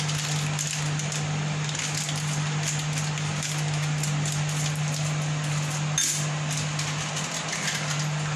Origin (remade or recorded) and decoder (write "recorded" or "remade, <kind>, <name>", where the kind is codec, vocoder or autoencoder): recorded